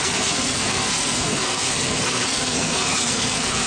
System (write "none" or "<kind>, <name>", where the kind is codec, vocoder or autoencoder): codec, SNAC